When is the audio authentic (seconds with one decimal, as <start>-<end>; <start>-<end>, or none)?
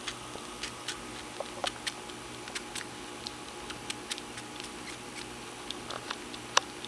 0.0-6.9